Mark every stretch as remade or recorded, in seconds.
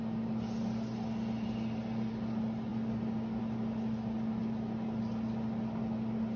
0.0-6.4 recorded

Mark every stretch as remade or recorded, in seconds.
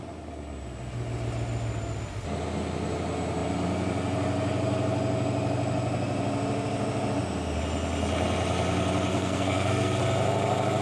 0.0-9.1 recorded; 9.1-10.0 remade; 10.0-10.8 recorded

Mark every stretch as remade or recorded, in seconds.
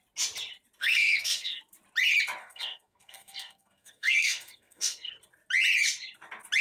0.0-0.8 recorded; 0.8-1.6 remade; 1.6-2.4 recorded; 2.4-5.1 remade; 5.1-6.6 recorded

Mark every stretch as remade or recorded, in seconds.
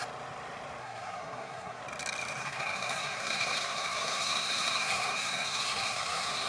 0.0-0.8 recorded; 0.8-1.8 remade; 1.8-2.4 recorded; 2.4-6.5 remade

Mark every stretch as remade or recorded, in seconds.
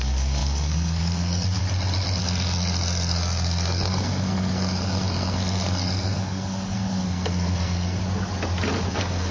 0.0-1.6 remade; 1.6-2.2 recorded; 2.2-8.0 remade; 8.0-8.9 recorded; 8.9-9.3 remade